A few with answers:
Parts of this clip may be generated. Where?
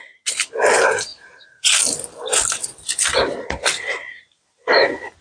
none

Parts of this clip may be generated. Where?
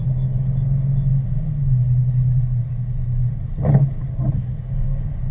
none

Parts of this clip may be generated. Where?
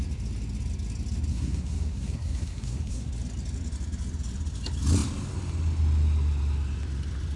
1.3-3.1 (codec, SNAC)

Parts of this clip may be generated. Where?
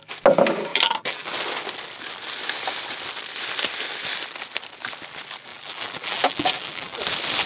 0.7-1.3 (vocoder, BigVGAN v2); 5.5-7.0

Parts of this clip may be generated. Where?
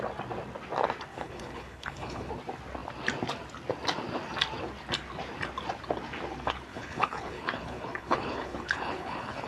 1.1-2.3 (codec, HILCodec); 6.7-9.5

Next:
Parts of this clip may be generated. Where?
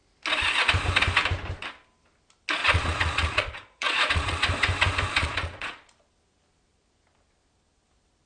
2.6-4.4 (vocoder, Vocos); 5.2-5.8